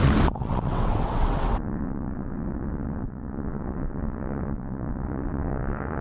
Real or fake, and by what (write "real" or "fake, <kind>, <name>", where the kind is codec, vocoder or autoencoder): fake, vocoder, WaveNeXt